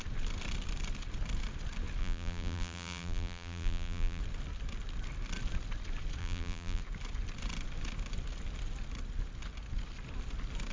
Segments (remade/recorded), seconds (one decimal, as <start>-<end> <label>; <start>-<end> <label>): 0.0-2.0 recorded; 2.0-4.2 remade; 4.2-6.2 recorded; 6.2-6.8 remade; 6.8-10.7 recorded